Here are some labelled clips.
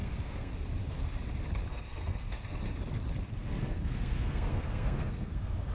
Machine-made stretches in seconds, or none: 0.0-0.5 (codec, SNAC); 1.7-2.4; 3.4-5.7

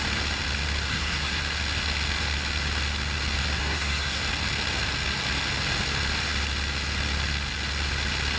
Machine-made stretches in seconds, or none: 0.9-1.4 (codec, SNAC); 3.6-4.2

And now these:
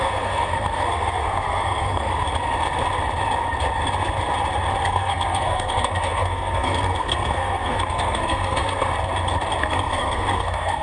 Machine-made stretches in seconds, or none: 0.0-2.1 (codec, SNAC); 4.8-8.9; 9.6-10.8